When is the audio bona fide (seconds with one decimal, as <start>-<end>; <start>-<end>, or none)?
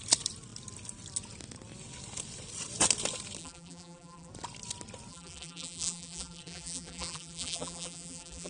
0.0-3.4; 4.3-5.1